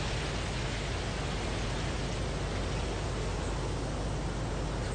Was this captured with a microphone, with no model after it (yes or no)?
yes